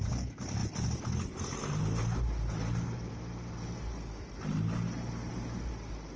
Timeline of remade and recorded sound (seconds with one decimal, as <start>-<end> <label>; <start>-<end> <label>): 0.0-6.2 recorded